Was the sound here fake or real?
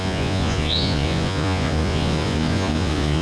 fake